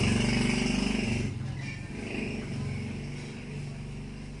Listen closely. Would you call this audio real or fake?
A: real